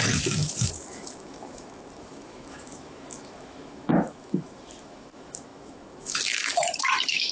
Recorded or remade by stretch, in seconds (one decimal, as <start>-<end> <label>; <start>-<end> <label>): 0.0-7.3 remade